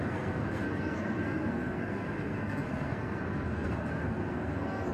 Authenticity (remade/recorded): remade